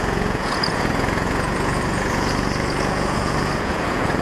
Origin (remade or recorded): remade